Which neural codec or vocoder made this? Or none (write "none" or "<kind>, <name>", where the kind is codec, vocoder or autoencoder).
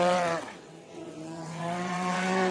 vocoder, WaveNeXt